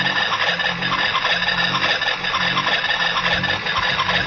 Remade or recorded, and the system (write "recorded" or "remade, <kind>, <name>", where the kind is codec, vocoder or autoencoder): recorded